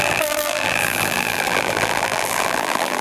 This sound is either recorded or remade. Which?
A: remade